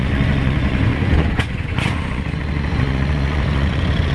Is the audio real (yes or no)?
no